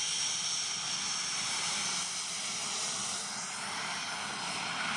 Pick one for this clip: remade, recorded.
recorded